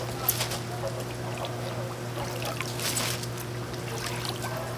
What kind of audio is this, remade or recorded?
recorded